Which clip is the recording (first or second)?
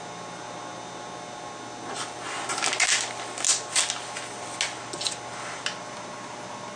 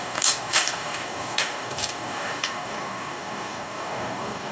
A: first